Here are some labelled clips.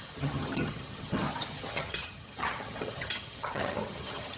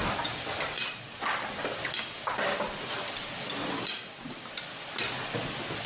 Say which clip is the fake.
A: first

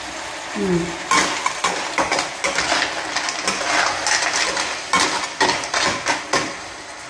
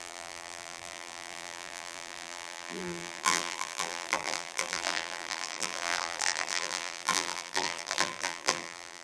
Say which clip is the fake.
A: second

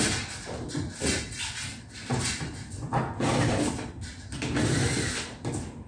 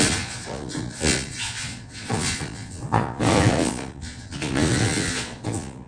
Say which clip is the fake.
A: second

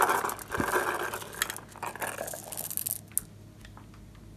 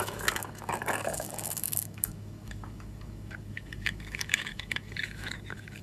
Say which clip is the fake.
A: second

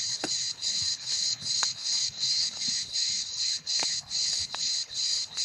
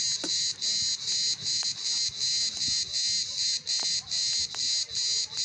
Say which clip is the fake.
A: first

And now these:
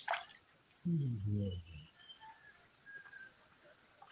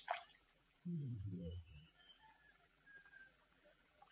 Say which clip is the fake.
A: second